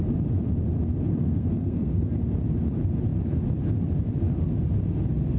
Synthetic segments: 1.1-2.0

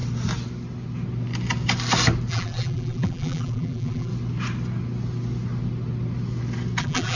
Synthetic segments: 2.3-4.1; 6.8-7.2